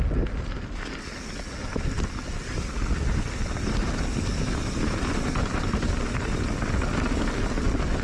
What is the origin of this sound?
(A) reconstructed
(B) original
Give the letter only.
B